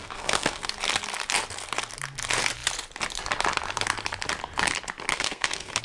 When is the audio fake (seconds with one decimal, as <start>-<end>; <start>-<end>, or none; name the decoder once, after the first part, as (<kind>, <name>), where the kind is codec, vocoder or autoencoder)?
0.0-0.7 (codec, SNAC); 5.1-5.8

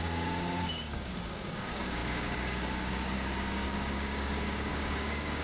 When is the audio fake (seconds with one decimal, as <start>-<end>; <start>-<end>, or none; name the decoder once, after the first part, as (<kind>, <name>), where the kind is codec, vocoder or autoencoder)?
0.0-5.4 (codec, DAC)

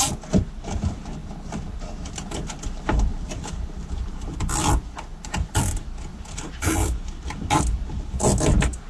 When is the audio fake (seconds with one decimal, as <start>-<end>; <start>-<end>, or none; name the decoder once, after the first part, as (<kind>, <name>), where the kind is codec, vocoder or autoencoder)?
1.2-5.6 (vocoder, BigVGAN v2); 6.1-6.7